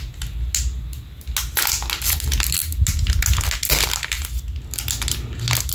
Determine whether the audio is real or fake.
real